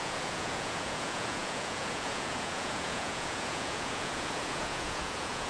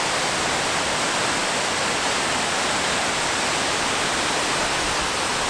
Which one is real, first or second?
second